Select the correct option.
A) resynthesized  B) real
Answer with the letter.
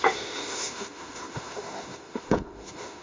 A